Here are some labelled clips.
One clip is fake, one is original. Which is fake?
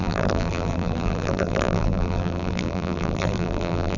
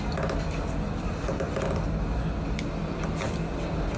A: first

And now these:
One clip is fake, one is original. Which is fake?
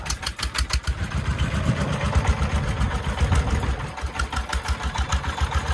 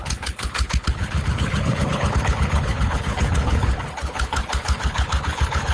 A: second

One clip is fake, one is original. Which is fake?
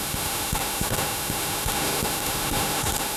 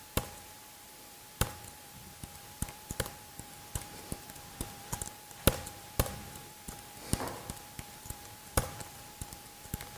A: first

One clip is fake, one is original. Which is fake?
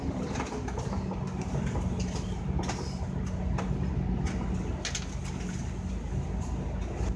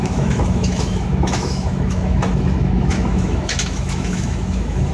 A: second